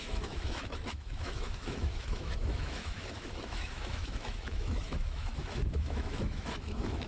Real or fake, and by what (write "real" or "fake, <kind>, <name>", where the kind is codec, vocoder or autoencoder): fake, autoencoder, DAC-VAE